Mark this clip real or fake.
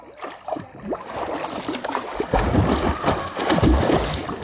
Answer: real